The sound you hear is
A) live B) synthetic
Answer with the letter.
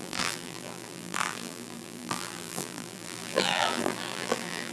B